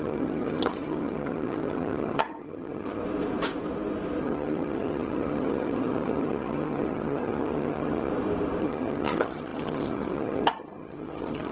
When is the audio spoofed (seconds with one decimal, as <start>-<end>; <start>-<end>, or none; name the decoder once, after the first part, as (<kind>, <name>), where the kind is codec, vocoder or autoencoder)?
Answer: 0.0-3.0 (vocoder, HiFi-GAN); 4.2-8.1; 8.6-11.5